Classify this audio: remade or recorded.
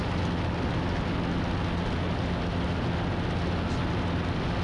recorded